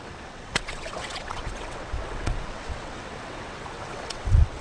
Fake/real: fake